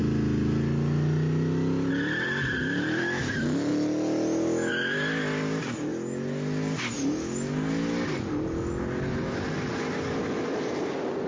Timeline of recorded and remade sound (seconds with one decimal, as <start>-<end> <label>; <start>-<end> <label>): 0.0-1.9 recorded; 1.9-3.7 remade; 3.7-4.7 recorded; 4.7-5.9 remade; 5.9-11.3 recorded